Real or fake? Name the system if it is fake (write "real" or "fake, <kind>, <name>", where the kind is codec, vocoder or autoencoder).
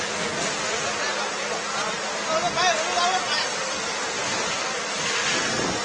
real